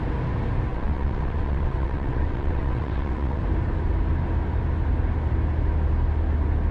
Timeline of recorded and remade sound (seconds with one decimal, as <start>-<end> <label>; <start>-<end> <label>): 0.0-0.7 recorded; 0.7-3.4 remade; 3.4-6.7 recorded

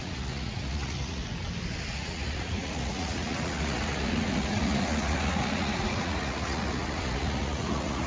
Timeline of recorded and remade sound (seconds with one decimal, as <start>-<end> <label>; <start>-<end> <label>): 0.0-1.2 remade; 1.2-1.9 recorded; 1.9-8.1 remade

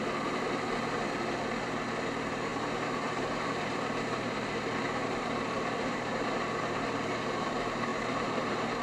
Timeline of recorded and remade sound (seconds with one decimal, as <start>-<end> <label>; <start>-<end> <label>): 0.0-8.8 remade

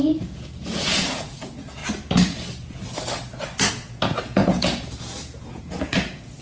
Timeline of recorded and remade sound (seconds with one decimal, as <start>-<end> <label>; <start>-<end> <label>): 0.0-1.8 remade; 1.8-3.7 recorded; 3.7-6.4 remade

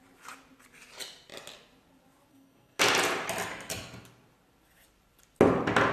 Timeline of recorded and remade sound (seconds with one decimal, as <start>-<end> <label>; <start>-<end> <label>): 0.0-2.3 recorded; 2.3-2.8 remade; 2.8-5.9 recorded

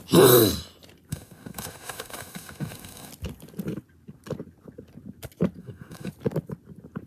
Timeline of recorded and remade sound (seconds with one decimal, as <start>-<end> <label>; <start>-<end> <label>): 0.0-1.1 recorded; 1.1-3.1 remade; 3.1-5.6 recorded; 5.6-6.1 remade; 6.1-7.1 recorded

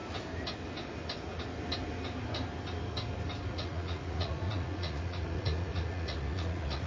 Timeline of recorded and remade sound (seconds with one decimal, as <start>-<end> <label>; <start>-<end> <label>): 0.0-3.5 recorded; 3.5-6.9 remade